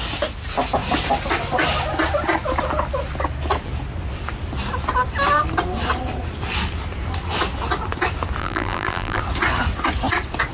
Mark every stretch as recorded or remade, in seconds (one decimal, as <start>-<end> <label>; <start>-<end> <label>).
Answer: 0.0-8.4 recorded; 8.4-9.2 remade; 9.2-10.5 recorded